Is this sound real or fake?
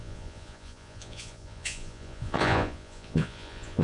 fake